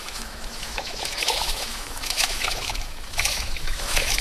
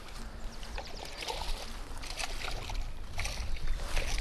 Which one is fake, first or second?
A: first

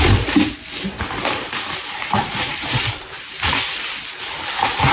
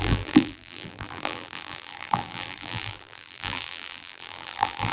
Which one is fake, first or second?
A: second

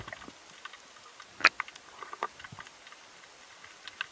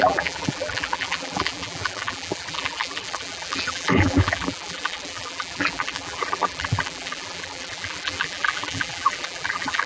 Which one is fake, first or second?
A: second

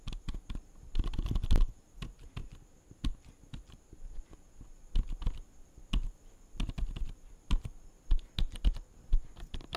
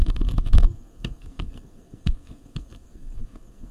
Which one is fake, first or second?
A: second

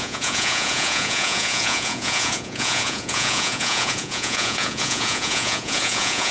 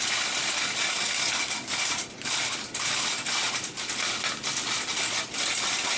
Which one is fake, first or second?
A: first